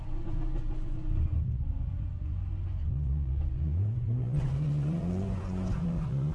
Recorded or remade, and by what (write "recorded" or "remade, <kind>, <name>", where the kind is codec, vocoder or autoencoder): remade, vocoder, Vocos